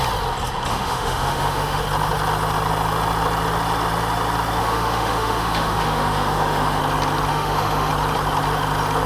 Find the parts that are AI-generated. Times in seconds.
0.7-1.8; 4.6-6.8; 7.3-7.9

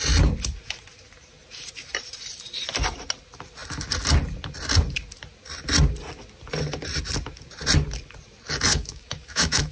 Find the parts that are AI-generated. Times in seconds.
8.7-9.7

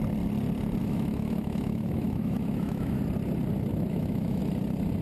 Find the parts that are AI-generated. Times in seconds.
0.8-3.0; 3.7-4.4